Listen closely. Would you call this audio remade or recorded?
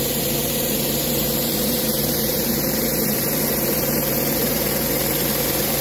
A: remade